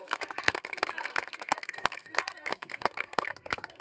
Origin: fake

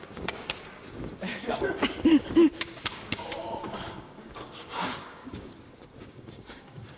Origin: fake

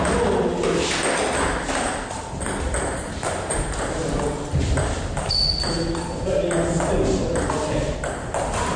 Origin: real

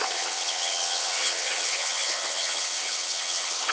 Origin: fake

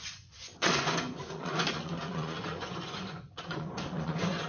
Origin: fake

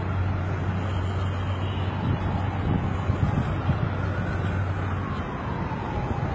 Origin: real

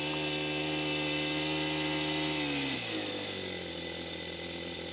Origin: real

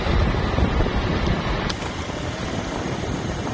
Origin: real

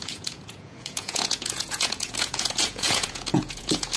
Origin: fake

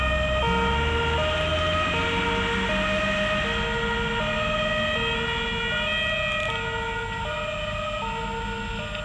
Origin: real